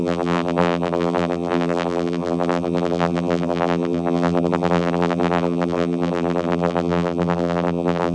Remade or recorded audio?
remade